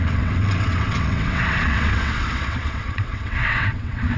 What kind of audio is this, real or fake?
fake